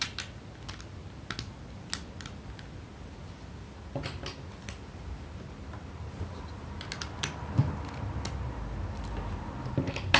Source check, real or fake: real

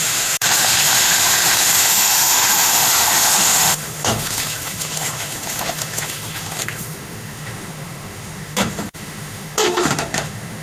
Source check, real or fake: fake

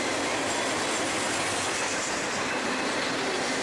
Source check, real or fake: real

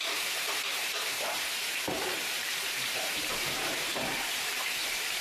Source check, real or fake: fake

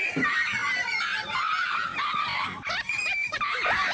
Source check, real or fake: real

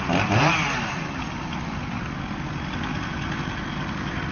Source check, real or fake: real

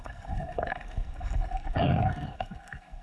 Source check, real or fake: fake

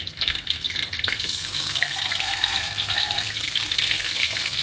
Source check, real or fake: fake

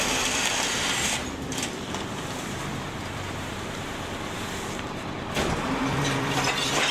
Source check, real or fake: fake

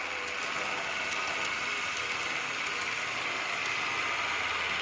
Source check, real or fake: real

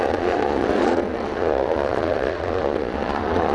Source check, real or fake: fake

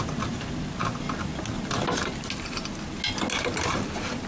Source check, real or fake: real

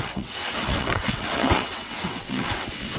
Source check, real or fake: fake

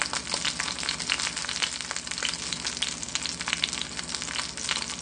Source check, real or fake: real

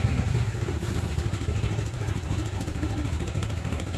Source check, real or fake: fake